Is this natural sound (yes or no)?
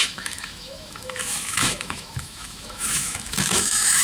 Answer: no